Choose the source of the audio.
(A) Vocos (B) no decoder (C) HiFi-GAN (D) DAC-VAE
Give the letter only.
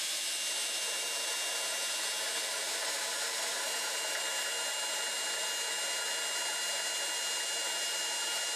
B